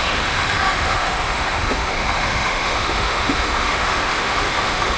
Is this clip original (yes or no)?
no